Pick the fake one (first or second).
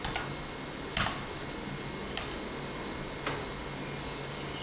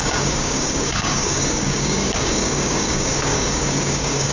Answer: second